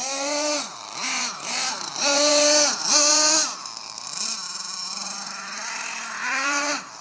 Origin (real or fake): fake